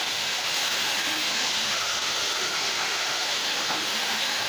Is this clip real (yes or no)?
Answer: no